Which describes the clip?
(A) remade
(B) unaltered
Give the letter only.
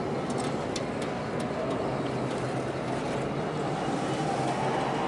B